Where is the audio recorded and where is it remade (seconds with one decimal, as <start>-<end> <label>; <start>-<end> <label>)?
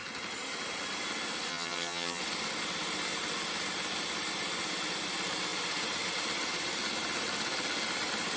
0.0-1.5 recorded; 1.5-2.2 remade; 2.2-8.4 recorded